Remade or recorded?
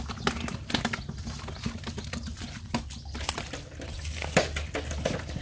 recorded